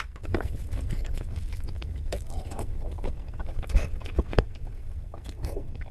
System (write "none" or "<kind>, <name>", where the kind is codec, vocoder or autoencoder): codec, SNAC